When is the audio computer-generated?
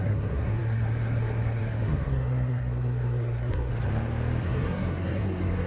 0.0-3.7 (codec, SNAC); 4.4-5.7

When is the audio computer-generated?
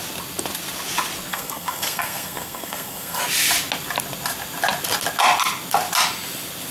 1.3-3.2 (codec, SNAC)